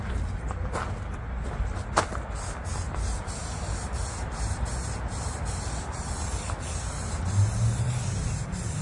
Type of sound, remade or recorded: recorded